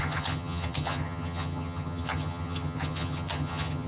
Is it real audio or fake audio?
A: fake